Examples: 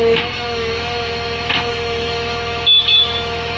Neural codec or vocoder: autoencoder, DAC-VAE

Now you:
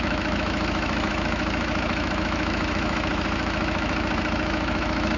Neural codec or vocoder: autoencoder, DAC-VAE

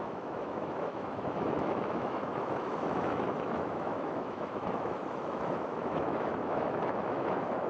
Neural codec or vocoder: autoencoder, DAC-VAE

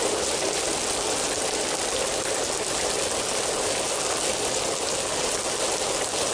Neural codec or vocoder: none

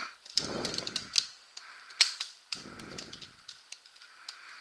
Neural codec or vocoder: none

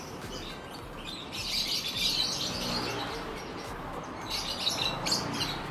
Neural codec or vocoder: none